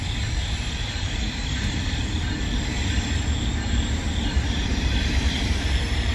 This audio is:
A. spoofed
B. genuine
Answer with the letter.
A